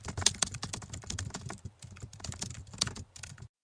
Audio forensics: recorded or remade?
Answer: recorded